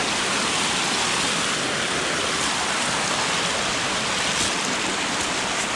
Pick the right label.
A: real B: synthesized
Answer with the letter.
A